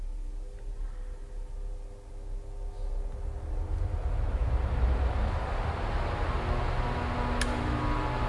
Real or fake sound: real